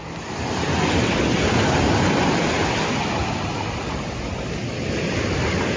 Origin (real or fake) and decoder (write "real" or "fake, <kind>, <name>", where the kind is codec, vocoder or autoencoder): real